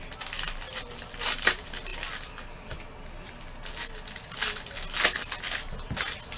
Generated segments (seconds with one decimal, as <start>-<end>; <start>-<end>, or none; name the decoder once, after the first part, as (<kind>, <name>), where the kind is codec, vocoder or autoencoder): none